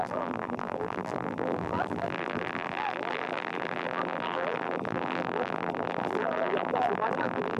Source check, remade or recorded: remade